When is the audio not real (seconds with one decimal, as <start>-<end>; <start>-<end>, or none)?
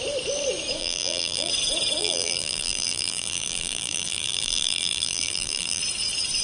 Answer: 0.8-1.5; 2.0-5.8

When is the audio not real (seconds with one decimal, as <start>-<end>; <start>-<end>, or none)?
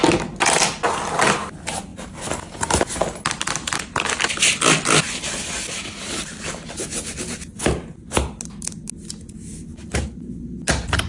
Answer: 1.9-2.9; 9.7-10.3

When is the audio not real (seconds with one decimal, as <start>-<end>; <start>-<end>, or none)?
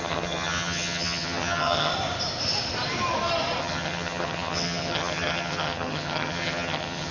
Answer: 0.0-1.9; 3.6-7.1